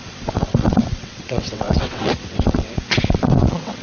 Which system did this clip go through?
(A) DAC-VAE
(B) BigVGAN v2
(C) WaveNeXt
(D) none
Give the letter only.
C